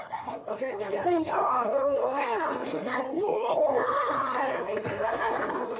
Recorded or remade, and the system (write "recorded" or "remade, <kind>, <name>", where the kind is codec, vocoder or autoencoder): remade, codec, SNAC